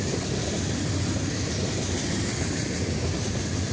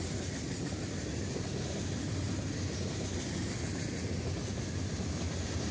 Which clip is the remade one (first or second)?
first